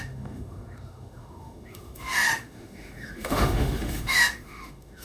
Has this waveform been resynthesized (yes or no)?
yes